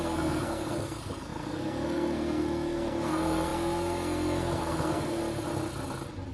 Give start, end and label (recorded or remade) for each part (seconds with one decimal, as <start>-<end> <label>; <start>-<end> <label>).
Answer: 0.0-5.2 remade; 5.2-6.3 recorded